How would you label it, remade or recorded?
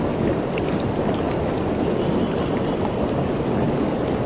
recorded